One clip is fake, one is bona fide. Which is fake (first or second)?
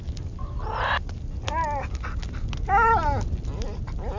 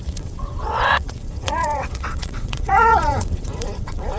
second